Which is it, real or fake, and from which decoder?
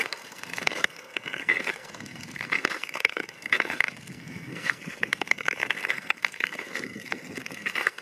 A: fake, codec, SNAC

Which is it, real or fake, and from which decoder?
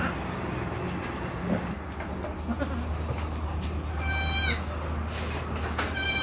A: real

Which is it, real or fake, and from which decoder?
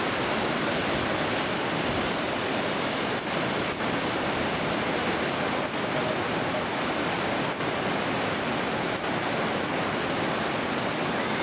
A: real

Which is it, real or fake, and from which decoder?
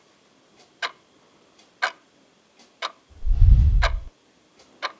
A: real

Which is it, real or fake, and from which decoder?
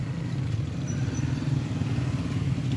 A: real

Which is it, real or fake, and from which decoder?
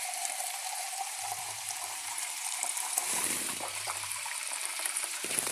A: fake, vocoder, BigVGAN v2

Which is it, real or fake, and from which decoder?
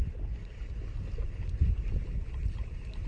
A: real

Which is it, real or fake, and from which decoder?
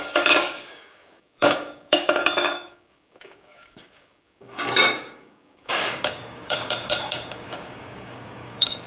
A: fake, codec, DAC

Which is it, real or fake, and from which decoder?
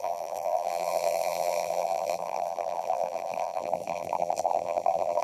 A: fake, vocoder, BigVGAN v2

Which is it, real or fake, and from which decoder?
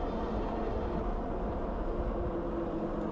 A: real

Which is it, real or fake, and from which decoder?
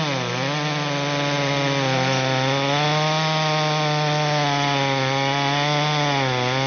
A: real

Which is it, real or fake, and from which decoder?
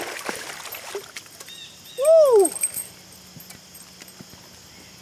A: real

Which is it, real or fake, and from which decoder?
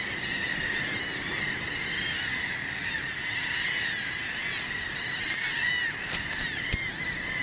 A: real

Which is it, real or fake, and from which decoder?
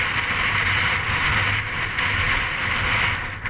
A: real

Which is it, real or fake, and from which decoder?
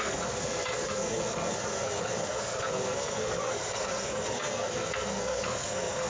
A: fake, codec, SNAC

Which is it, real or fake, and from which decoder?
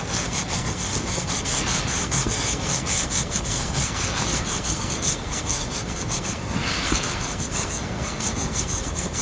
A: fake, codec, SNAC